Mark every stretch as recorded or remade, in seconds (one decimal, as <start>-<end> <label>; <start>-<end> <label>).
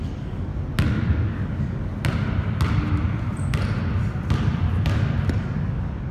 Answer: 0.0-0.5 remade; 0.5-1.1 recorded; 1.1-1.9 remade; 1.9-5.4 recorded; 5.4-6.1 remade